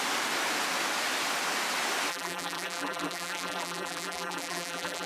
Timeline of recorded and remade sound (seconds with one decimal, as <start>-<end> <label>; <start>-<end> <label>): 0.0-2.1 recorded; 2.1-5.1 remade